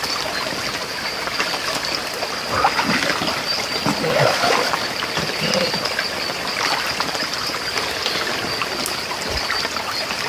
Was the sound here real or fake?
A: real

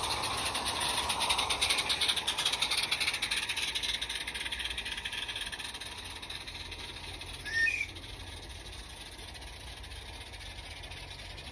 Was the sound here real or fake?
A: real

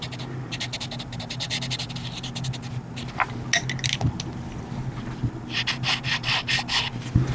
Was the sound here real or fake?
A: real